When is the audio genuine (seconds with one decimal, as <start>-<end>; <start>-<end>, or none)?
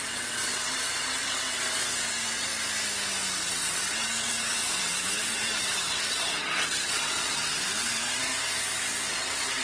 2.5-3.5; 8.3-9.1